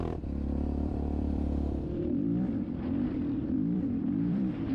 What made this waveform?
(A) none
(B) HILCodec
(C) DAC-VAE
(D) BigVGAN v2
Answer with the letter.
D